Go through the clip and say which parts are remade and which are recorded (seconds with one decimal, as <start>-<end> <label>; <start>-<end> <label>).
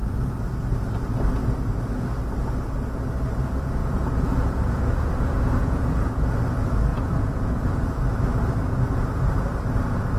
0.0-3.8 recorded; 3.8-6.1 remade; 6.1-6.9 recorded; 6.9-7.8 remade; 7.8-10.2 recorded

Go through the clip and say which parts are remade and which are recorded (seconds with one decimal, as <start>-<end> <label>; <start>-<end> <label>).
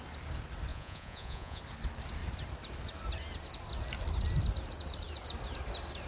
0.0-0.7 recorded; 0.7-1.6 remade; 1.6-6.1 recorded